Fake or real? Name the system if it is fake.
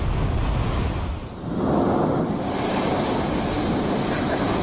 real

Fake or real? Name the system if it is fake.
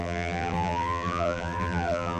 fake, vocoder, BigVGAN v2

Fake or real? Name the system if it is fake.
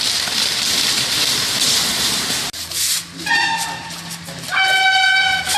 real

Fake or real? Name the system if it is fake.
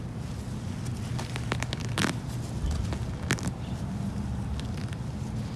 real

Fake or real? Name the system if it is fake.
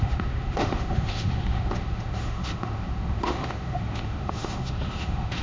fake, autoencoder, DAC-VAE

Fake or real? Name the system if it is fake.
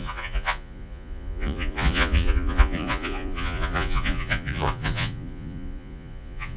fake, vocoder, Vocos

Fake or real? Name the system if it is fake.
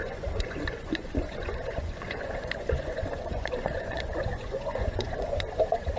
fake, vocoder, Vocos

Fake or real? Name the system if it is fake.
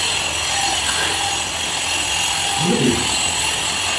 real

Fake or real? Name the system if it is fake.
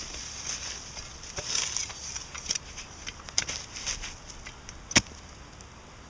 real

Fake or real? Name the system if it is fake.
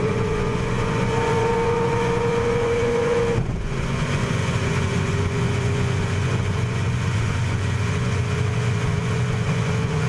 fake, vocoder, Vocos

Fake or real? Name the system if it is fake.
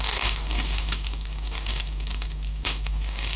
fake, codec, DAC